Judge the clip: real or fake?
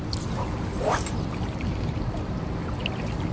real